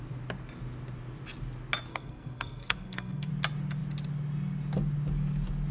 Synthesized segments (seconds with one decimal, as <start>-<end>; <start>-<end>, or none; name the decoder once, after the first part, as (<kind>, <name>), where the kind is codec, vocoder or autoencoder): 1.9-3.3 (codec, SNAC)